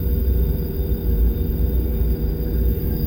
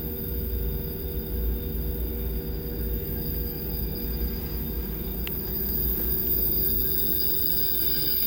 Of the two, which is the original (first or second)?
second